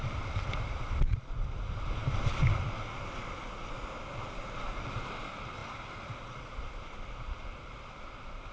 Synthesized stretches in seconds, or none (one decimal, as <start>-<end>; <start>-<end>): none